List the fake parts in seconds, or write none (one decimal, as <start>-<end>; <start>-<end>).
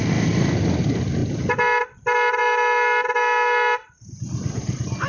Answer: none